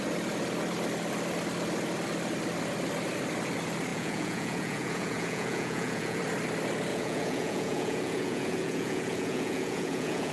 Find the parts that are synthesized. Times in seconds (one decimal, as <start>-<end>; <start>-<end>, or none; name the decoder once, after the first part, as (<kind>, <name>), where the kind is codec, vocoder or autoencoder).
3.9-6.2 (vocoder, Vocos); 6.9-10.3